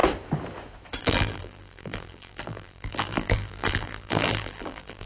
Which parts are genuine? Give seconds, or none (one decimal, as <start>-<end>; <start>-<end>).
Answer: 0.0-1.0